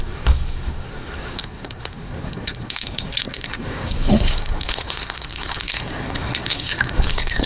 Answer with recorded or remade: remade